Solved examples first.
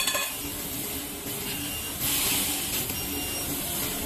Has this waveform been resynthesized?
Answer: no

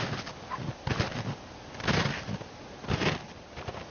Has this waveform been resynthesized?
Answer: no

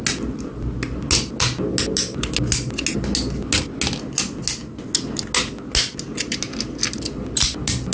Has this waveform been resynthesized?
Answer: no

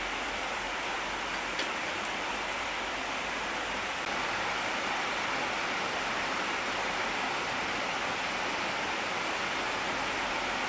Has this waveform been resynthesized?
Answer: no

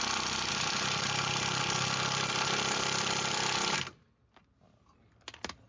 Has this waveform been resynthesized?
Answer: no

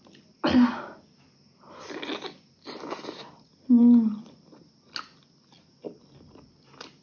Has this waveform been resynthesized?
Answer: no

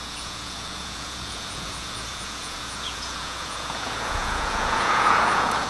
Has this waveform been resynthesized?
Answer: yes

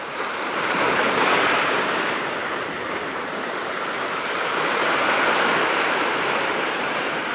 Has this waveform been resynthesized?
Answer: yes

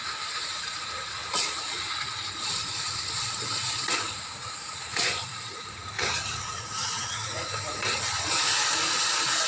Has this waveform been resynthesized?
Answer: yes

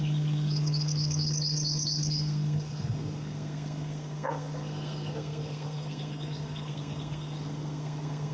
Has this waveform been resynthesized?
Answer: yes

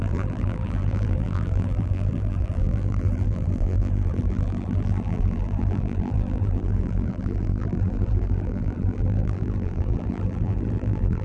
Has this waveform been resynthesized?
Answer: yes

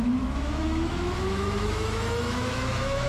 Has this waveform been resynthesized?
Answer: yes